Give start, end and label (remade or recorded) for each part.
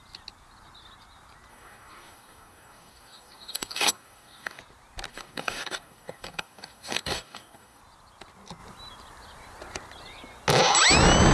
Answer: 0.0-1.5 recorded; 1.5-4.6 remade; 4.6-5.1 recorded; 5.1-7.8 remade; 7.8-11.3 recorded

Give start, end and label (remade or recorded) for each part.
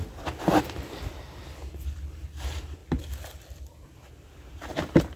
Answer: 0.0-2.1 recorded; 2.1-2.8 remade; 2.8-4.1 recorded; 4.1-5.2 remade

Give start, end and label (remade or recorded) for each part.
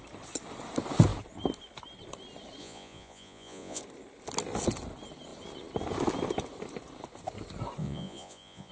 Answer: 0.0-2.6 recorded; 2.6-3.8 remade; 3.8-7.8 recorded; 7.8-8.7 remade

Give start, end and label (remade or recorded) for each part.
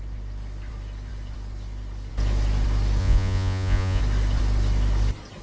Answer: 0.0-3.0 recorded; 3.0-4.0 remade; 4.0-5.4 recorded